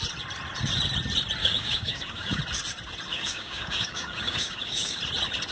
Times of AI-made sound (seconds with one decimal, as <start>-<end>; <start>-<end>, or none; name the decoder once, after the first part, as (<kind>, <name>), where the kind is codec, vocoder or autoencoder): 1.4-2.4 (codec, DAC); 3.1-5.0